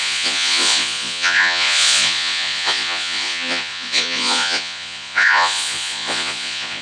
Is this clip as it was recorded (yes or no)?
no